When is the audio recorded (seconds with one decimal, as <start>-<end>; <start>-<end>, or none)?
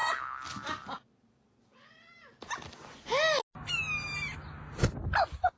0.0-5.6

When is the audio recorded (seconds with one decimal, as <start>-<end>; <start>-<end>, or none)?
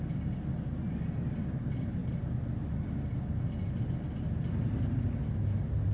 0.0-5.9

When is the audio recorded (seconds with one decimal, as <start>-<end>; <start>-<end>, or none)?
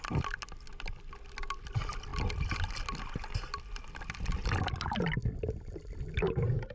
0.0-0.7; 1.4-6.7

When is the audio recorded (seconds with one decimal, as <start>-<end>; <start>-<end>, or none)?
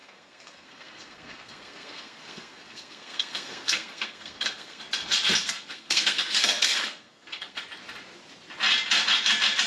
4.8-5.4; 7.6-9.7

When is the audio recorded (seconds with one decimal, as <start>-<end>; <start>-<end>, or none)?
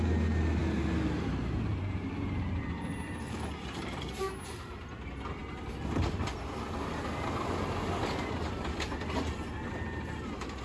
0.0-0.6; 4.2-10.6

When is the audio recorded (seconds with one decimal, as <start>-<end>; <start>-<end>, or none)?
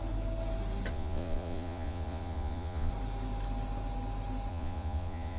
0.0-0.9; 2.9-4.5